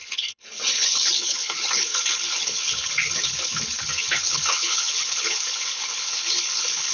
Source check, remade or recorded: remade